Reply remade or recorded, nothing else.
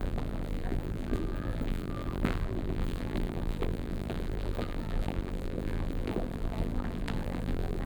remade